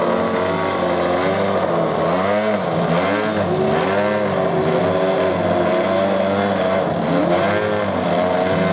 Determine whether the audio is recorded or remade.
recorded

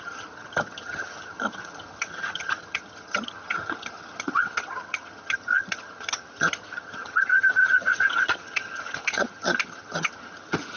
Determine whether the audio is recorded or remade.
remade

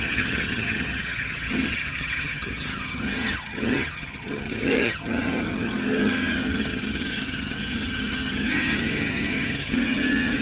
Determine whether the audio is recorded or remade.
remade